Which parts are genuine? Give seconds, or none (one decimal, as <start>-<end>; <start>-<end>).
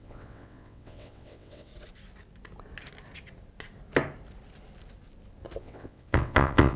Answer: 1.7-5.6